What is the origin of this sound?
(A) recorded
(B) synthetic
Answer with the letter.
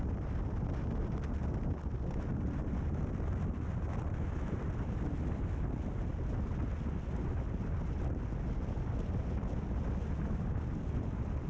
A